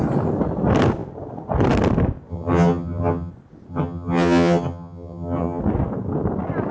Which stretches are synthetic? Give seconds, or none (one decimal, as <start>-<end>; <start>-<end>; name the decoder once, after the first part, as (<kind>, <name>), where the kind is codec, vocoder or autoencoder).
2.3-3.3 (vocoder, HiFi-GAN); 3.7-5.6